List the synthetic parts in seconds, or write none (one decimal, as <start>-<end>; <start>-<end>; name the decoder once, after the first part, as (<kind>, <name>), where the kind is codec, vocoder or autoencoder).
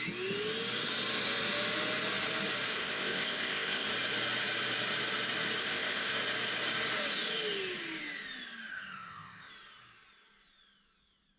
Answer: 2.7-3.9 (codec, ZipCodec); 5.6-6.1; 8.7-9.5